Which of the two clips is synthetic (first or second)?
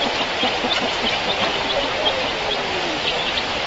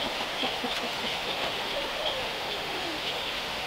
second